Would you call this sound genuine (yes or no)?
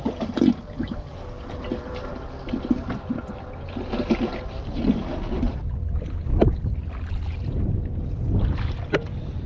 yes